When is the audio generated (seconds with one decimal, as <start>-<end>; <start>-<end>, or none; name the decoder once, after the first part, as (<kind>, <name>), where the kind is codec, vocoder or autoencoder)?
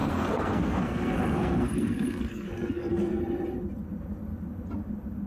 0.0-3.2 (codec, SNAC)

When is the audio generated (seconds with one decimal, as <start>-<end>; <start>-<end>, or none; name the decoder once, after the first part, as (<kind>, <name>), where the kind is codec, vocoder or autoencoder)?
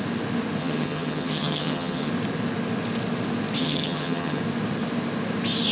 0.6-2.1 (vocoder, HiFi-GAN); 3.6-4.4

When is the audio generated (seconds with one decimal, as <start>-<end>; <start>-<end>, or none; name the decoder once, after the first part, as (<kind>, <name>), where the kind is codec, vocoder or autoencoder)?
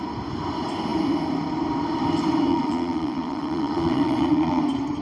2.5-4.6 (vocoder, Vocos)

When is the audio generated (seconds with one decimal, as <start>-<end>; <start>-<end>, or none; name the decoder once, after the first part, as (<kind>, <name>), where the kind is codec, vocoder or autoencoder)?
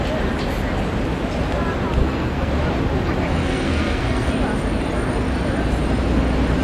2.0-2.5 (codec, SNAC); 3.4-4.3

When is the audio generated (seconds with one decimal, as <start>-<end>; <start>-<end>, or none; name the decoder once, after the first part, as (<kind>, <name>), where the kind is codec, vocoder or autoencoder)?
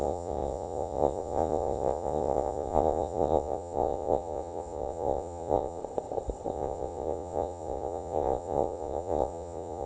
0.0-5.8 (vocoder, Vocos); 6.5-9.9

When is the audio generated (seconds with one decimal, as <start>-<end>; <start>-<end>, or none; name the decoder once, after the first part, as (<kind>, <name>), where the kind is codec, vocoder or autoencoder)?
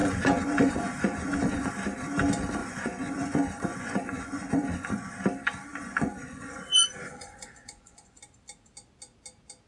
0.0-1.7 (vocoder, Vocos); 2.6-5.1; 5.7-8.2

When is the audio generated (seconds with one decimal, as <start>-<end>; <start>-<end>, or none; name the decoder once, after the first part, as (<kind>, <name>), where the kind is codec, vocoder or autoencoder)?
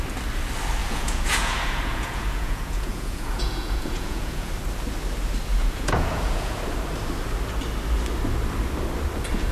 0.8-4.5 (vocoder, Vocos); 5.5-6.6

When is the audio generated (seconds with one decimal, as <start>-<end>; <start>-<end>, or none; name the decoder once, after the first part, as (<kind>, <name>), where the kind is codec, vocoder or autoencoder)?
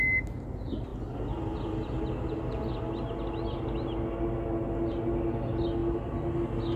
none